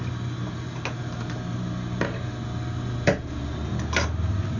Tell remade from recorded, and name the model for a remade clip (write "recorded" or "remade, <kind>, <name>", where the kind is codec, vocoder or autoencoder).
recorded